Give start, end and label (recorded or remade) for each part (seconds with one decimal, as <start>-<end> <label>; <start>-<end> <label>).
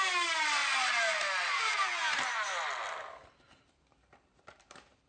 0.0-0.6 remade; 0.6-1.5 recorded; 1.5-2.5 remade; 2.5-3.3 recorded; 3.3-5.1 remade